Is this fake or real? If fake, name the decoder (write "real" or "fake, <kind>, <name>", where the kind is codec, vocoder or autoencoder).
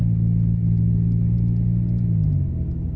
real